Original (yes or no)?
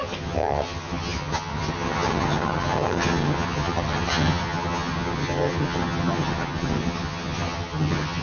no